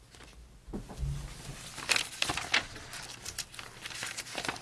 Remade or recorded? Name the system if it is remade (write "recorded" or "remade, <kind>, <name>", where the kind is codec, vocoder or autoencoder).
recorded